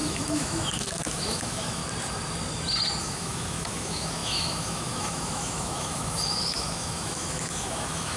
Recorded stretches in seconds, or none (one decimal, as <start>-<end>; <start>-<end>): 1.8-3.0